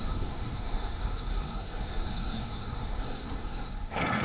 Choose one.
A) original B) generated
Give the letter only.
B